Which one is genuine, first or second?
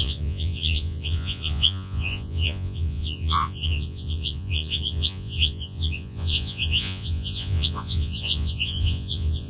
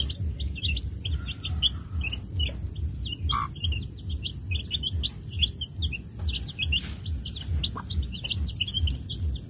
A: second